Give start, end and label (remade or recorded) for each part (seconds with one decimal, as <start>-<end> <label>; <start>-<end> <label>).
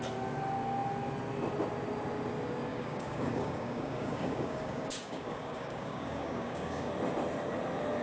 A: 0.0-2.7 recorded; 2.7-6.9 remade; 6.9-8.0 recorded